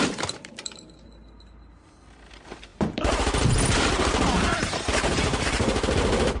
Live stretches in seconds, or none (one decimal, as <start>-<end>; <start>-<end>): 0.0-6.4